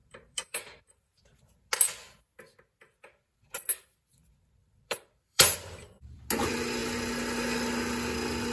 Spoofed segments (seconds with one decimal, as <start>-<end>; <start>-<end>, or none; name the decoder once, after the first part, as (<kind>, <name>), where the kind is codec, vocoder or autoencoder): 0.0-1.4 (vocoder, BigVGAN v2); 4.6-6.2